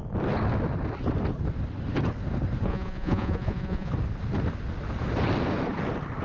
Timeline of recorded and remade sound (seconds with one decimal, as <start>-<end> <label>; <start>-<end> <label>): 0.0-2.7 recorded; 2.7-3.9 remade; 3.9-6.2 recorded